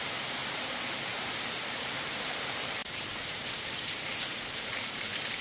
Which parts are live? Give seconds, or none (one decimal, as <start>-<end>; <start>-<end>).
none